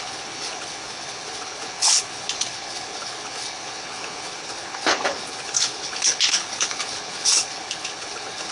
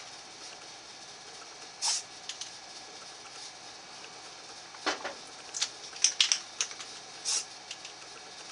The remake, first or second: first